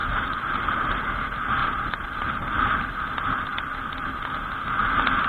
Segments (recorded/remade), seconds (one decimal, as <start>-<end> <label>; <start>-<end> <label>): 0.0-1.0 remade; 1.0-1.6 recorded; 1.6-2.5 remade; 2.5-5.3 recorded